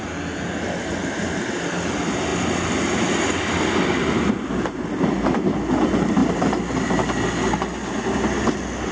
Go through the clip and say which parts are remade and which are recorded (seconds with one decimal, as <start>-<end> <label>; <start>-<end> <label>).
0.0-8.9 recorded